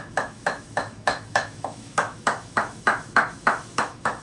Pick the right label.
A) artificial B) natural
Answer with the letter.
A